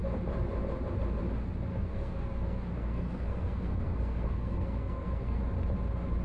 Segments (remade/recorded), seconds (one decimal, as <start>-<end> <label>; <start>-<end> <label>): 0.0-1.7 recorded; 1.7-5.4 remade; 5.4-6.2 recorded